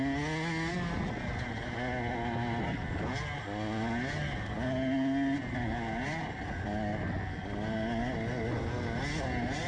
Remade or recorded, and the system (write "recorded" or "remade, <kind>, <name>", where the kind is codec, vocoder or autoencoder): recorded